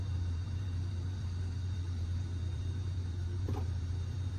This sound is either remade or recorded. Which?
remade